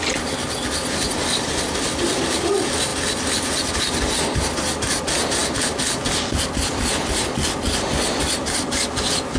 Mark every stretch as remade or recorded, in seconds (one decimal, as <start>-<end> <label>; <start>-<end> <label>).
0.0-9.4 recorded